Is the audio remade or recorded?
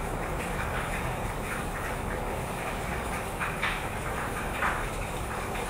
remade